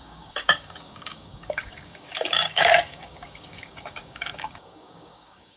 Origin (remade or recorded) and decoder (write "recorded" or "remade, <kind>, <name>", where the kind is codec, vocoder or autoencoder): remade, codec, DAC